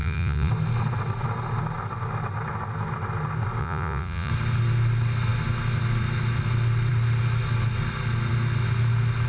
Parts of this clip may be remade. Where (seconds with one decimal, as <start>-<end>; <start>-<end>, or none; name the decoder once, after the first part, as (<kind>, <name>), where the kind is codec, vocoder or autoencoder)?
0.0-0.5 (vocoder, Vocos); 3.6-4.3